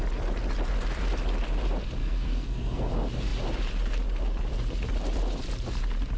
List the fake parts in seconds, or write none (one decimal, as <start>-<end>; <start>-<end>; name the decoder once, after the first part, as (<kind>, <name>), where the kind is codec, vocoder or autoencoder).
2.0-2.9 (codec, SNAC)